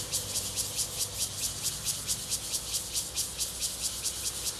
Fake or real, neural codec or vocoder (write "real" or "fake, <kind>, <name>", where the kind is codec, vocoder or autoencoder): real